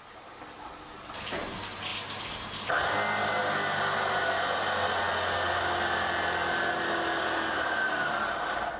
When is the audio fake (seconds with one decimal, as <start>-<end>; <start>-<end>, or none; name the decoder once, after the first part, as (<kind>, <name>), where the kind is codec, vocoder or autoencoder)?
none